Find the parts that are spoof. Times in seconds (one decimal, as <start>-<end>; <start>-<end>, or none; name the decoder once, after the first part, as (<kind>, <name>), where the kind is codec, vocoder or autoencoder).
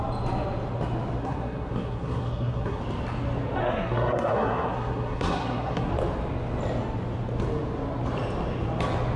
1.2-2.8 (codec, SNAC); 3.6-5.9